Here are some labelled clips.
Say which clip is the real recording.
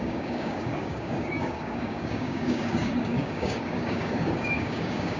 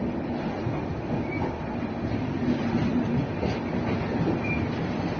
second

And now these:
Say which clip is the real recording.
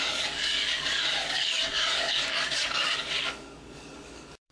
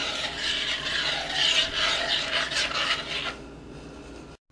second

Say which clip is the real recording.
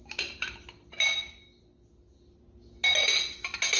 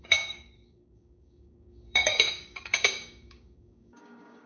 first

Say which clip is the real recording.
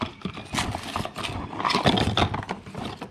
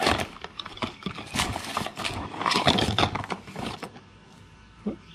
first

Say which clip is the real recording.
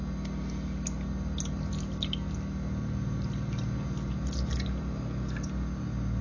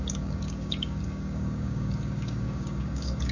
first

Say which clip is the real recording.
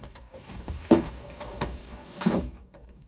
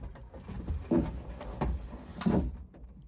second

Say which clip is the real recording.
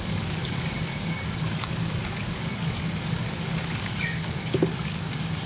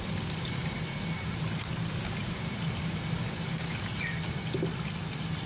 second